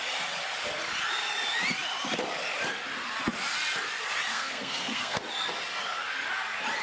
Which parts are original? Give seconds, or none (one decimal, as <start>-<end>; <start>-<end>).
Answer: 0.0-4.3; 5.2-6.8